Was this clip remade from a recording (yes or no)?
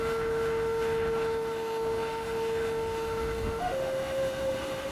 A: yes